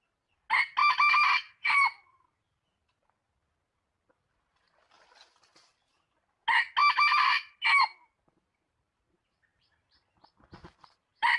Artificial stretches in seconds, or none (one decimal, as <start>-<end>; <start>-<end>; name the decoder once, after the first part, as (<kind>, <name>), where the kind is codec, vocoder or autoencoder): 0.8-2.4 (vocoder, BigVGAN v2); 6.8-10.1; 10.6-11.4